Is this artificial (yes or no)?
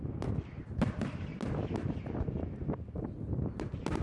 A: no